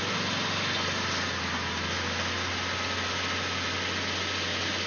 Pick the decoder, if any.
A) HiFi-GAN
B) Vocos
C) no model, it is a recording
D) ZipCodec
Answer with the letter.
C